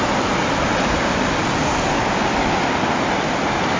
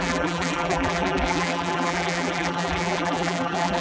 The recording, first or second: first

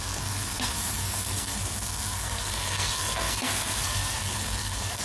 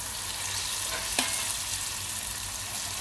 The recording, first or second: second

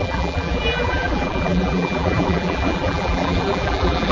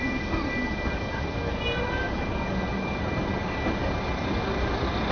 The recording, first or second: second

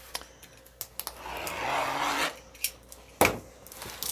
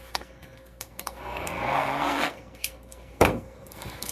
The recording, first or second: first